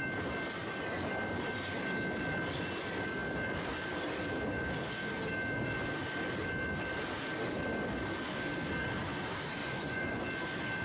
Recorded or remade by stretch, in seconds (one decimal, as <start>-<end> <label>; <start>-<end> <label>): 0.0-9.6 recorded; 9.6-10.2 remade; 10.2-10.8 recorded